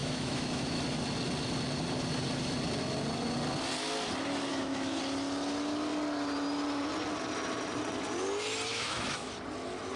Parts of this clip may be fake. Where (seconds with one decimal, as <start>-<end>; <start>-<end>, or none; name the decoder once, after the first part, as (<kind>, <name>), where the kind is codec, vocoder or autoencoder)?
0.0-0.8 (autoencoder, DAC-VAE); 4.5-5.0; 8.7-9.3